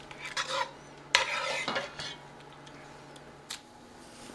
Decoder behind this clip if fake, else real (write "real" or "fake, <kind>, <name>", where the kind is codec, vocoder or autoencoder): real